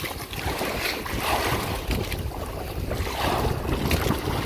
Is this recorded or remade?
recorded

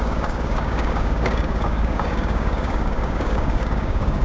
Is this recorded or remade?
remade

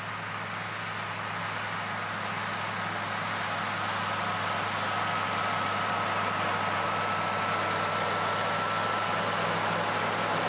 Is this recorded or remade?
recorded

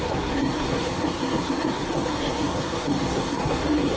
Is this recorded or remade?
remade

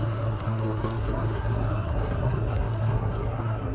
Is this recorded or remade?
remade